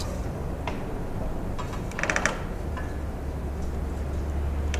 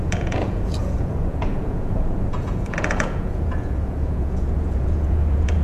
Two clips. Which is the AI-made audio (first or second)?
second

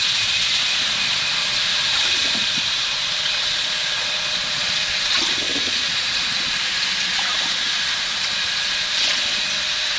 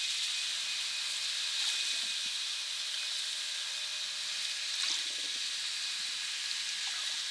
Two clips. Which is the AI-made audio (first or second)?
first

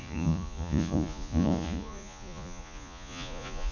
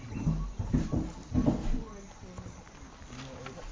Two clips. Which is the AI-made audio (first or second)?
first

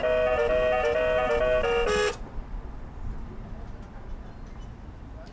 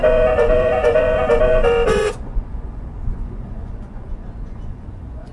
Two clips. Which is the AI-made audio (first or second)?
second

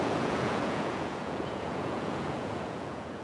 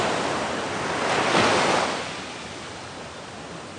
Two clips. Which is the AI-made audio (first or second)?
first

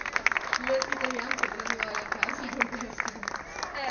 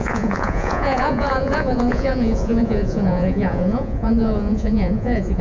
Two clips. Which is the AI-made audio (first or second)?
second